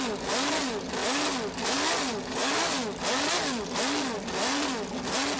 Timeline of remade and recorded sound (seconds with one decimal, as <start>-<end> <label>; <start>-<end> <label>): 0.0-5.4 recorded